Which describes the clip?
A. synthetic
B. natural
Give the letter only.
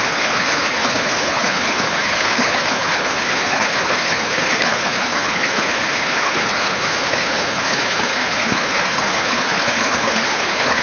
A